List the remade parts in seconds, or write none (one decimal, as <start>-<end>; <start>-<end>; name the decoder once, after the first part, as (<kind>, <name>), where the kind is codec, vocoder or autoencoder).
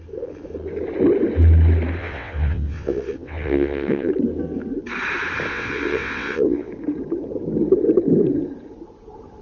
2.0-4.1 (vocoder, WaveNeXt); 5.5-6.7